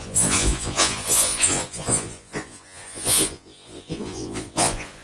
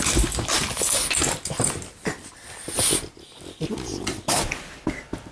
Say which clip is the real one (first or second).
second